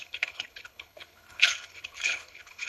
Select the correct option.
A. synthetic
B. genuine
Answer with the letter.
A